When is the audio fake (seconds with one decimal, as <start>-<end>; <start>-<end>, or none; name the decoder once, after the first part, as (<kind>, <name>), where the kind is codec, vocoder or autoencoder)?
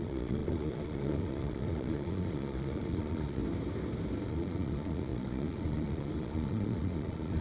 0.0-3.4 (vocoder, Vocos); 4.3-7.4